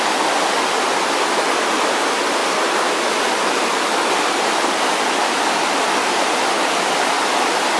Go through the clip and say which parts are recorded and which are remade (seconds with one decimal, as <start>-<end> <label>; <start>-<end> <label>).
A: 0.0-7.8 recorded